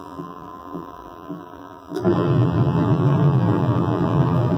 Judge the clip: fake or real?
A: fake